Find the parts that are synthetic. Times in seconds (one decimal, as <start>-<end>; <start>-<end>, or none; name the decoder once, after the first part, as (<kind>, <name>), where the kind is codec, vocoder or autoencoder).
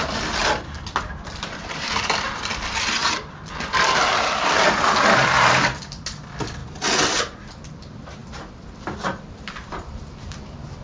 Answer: 0.0-0.4 (vocoder, BigVGAN v2); 1.0-6.6; 7.7-8.2; 9.7-10.8